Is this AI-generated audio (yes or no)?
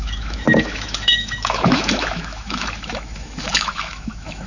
yes